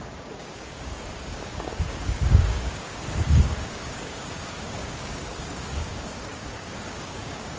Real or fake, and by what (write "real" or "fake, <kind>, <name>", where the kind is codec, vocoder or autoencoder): fake, codec, DAC